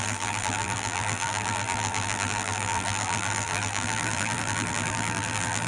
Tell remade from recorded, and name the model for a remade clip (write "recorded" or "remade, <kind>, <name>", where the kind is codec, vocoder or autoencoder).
remade, vocoder, BigVGAN v2